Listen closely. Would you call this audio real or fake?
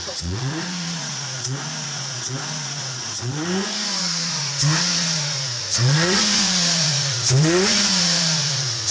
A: fake